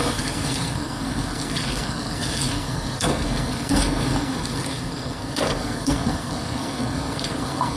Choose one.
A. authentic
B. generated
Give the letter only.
B